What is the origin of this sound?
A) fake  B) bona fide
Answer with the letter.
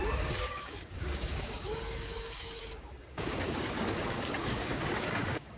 A